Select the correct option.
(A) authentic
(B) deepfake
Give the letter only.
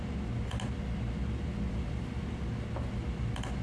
A